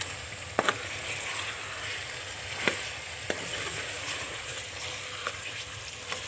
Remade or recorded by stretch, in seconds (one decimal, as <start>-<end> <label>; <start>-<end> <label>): 0.0-3.7 recorded; 3.7-4.6 remade; 4.6-5.2 recorded; 5.2-5.8 remade; 5.8-6.3 recorded